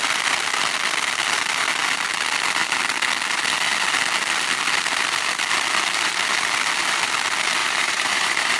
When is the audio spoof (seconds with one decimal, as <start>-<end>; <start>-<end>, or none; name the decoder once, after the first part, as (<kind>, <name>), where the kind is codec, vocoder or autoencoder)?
7.6-8.6 (vocoder, BigVGAN v2)